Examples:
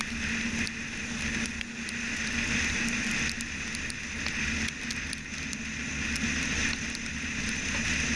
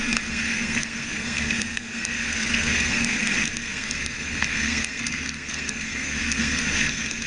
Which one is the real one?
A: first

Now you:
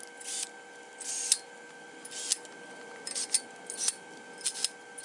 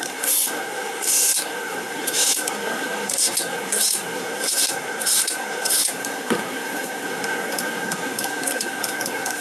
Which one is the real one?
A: first